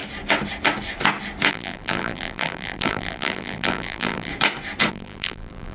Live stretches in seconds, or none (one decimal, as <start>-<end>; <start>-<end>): 0.0-1.5; 4.3-4.9